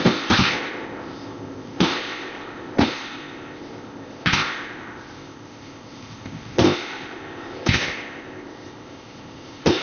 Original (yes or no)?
no